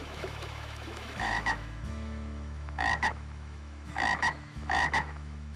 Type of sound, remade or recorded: remade